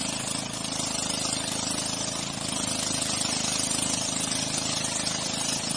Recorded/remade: recorded